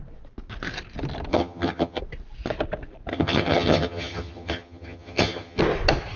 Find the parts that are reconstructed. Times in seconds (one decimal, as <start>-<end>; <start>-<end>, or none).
1.3-2.0; 3.1-5.6